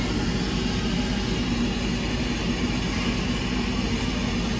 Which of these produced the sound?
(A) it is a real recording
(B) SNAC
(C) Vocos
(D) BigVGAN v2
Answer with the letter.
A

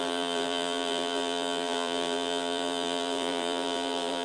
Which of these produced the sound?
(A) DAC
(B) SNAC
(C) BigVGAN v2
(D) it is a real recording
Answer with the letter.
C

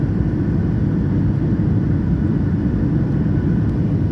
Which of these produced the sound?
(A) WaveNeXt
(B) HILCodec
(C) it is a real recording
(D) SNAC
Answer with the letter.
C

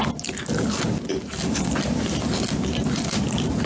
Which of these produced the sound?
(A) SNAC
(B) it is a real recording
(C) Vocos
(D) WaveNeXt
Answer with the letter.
B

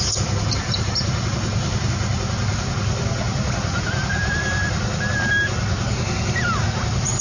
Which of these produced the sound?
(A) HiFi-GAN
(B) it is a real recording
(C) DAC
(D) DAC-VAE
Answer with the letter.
B